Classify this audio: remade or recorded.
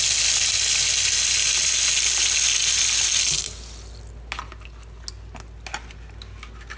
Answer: recorded